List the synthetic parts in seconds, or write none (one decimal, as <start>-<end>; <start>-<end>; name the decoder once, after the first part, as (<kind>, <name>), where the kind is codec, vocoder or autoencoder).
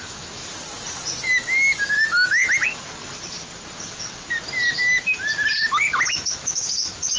0.0-0.4 (autoencoder, DAC-VAE); 1.2-2.4; 6.1-7.2